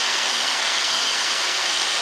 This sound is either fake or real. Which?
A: fake